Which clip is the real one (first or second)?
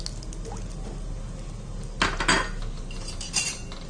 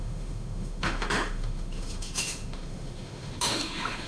first